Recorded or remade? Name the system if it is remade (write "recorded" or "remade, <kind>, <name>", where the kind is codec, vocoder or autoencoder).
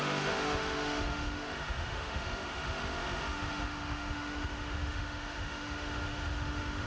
remade, autoencoder, DAC-VAE